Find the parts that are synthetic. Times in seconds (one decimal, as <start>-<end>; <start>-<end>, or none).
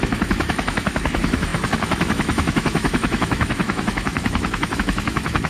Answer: 0.0-5.5